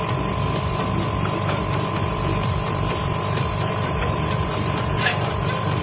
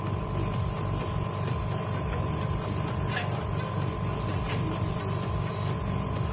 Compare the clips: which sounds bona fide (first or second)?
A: second